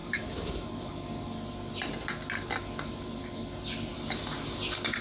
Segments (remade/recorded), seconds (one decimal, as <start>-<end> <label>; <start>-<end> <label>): 0.0-0.9 remade; 0.9-5.0 recorded